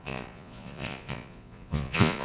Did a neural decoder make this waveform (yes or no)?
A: yes